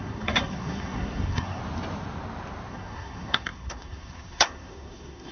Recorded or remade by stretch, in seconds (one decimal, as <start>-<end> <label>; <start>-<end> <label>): 0.0-1.6 remade; 1.6-2.7 recorded; 2.7-5.3 remade